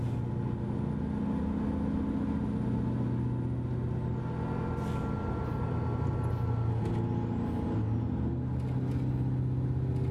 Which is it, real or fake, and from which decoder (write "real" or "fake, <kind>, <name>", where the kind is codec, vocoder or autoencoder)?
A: real